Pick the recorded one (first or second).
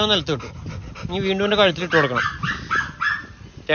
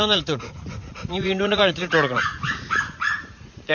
first